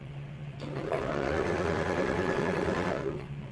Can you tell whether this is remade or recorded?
remade